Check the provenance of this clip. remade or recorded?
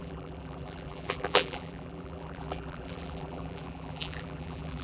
remade